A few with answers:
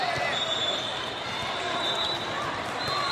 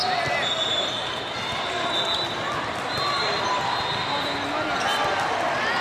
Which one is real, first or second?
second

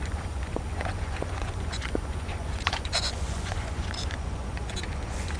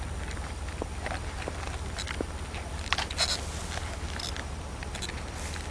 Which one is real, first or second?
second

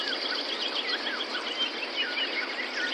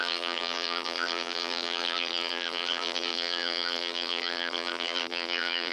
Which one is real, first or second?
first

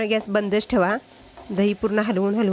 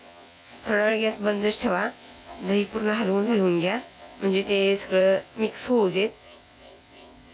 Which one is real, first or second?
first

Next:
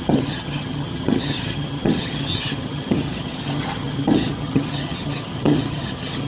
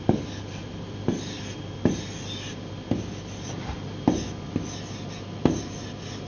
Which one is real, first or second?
second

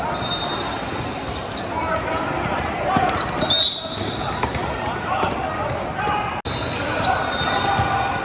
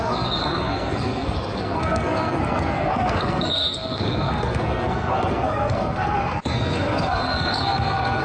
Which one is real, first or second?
first